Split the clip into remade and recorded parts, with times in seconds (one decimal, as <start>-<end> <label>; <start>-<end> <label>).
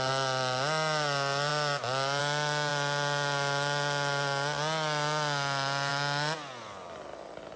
0.0-7.6 recorded